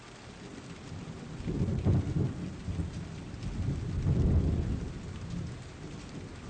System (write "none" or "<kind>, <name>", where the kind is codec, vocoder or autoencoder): none